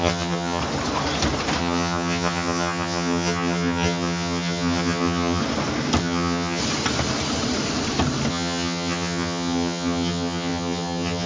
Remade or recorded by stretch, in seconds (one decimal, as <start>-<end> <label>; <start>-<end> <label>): 0.0-0.6 remade; 0.6-1.6 recorded; 1.6-5.4 remade; 5.4-6.0 recorded; 6.0-6.6 remade; 6.6-8.3 recorded; 8.3-11.3 remade